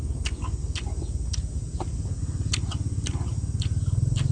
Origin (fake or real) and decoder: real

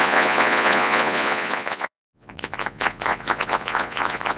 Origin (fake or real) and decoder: fake, vocoder, Vocos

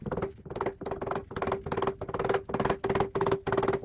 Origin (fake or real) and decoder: real